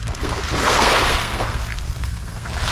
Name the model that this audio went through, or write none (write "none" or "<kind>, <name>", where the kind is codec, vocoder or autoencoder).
codec, SNAC